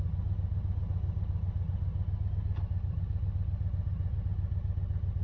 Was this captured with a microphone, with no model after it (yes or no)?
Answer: yes